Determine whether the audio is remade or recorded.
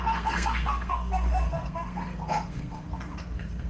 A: remade